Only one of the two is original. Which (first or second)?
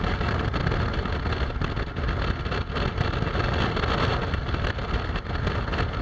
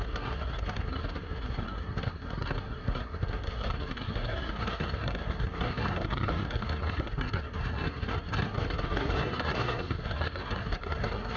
first